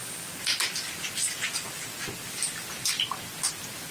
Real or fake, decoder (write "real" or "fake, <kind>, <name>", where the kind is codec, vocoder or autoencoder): real